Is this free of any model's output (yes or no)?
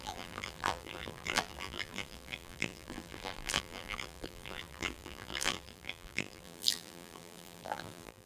no